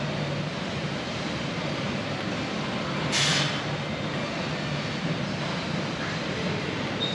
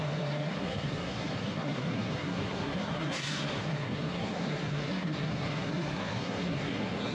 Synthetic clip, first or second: second